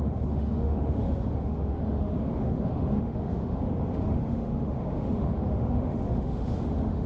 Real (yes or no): no